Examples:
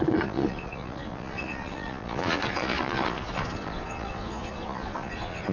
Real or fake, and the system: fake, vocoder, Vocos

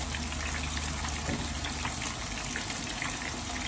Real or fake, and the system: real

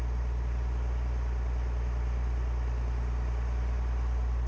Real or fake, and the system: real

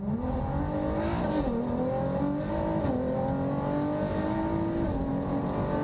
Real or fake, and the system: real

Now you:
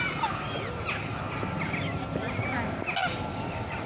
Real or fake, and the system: real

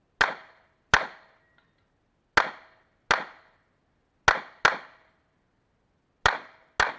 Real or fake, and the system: real